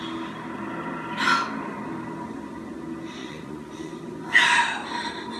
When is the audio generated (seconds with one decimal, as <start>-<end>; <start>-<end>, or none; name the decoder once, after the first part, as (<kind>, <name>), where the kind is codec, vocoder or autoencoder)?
3.2-3.9 (vocoder, Vocos)